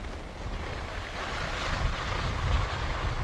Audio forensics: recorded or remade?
recorded